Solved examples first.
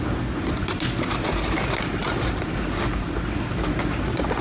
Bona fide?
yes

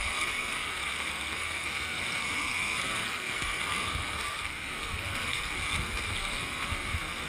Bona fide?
no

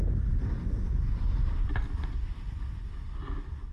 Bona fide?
yes